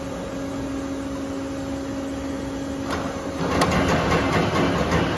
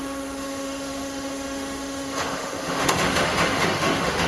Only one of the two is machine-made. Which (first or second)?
second